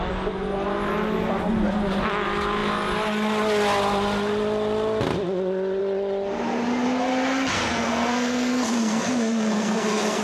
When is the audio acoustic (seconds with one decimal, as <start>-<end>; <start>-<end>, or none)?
0.0-7.5